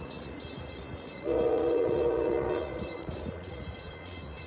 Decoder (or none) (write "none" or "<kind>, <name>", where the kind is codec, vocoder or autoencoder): vocoder, Vocos